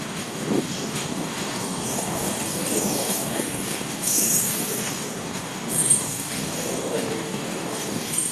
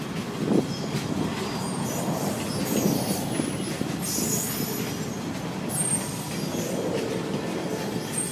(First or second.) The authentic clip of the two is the second